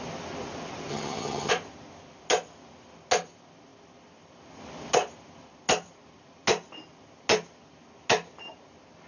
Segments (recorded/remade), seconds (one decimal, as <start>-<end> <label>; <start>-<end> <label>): 0.0-0.9 recorded; 0.9-1.5 remade; 1.5-9.1 recorded

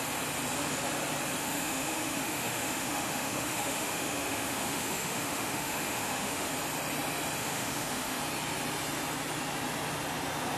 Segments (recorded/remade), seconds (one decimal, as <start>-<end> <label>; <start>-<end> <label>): 0.0-1.4 recorded; 1.4-6.5 remade; 6.5-7.4 recorded; 7.4-8.2 remade; 8.2-10.6 recorded

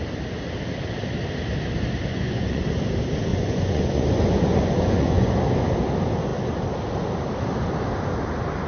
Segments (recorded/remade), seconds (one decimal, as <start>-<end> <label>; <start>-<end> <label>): 0.0-2.1 recorded; 2.1-2.6 remade; 2.6-3.3 recorded; 3.3-5.3 remade; 5.3-8.7 recorded

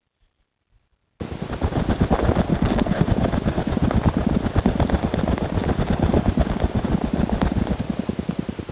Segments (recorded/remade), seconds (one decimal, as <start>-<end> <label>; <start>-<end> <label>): 0.0-2.5 recorded; 2.5-3.0 remade; 3.0-8.7 recorded

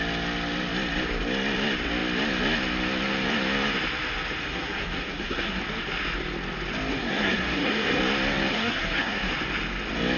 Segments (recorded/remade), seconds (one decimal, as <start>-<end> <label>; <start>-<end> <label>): 0.0-4.4 recorded; 4.4-5.6 remade; 5.6-6.9 recorded; 6.9-8.0 remade; 8.0-8.5 recorded; 8.5-9.3 remade; 9.3-10.2 recorded